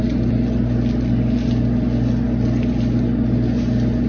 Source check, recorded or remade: recorded